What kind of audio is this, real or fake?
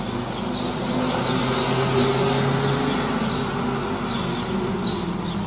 real